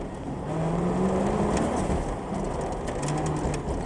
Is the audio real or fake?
real